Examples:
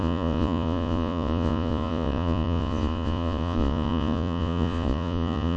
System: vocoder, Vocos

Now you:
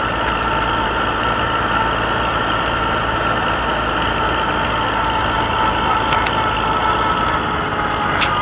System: none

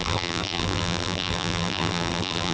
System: vocoder, BigVGAN v2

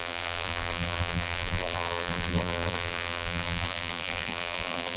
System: vocoder, BigVGAN v2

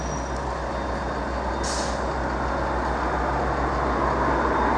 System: none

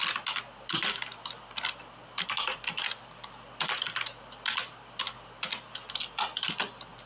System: none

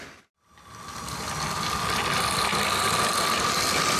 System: none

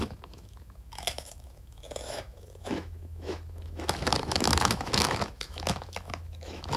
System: autoencoder, DAC-VAE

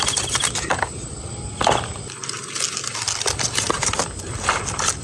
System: none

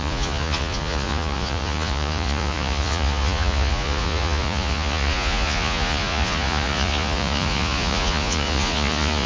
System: vocoder, Vocos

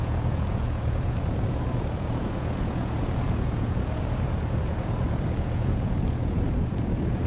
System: vocoder, Vocos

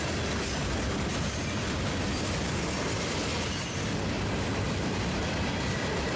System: none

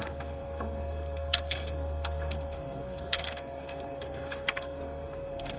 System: codec, SNAC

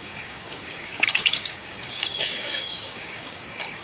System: codec, DAC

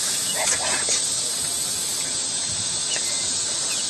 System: vocoder, Vocos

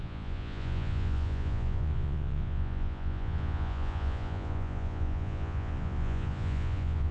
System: vocoder, Vocos